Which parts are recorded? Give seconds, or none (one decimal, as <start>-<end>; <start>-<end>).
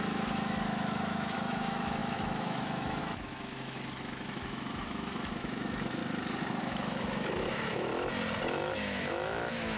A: 6.0-6.6; 7.9-8.4